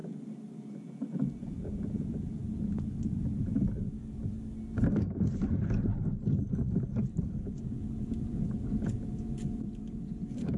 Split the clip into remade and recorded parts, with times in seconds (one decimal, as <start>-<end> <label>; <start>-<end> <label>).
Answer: 0.0-0.7 recorded; 0.7-2.4 remade; 2.4-7.2 recorded; 7.2-10.6 remade